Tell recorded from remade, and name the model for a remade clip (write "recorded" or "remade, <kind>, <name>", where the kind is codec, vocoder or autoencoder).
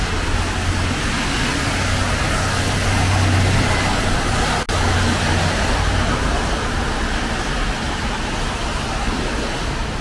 recorded